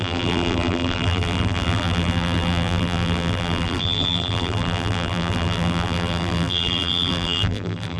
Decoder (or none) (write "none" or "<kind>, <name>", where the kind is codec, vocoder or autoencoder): vocoder, BigVGAN v2